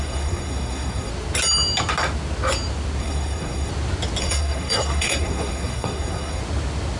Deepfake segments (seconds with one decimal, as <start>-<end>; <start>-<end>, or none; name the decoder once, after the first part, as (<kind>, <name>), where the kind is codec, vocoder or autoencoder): 0.0-1.1 (codec, SNAC); 3.0-3.7; 4.2-6.4